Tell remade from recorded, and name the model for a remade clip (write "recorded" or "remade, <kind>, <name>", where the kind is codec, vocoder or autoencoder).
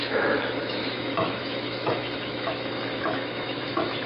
remade, autoencoder, DAC-VAE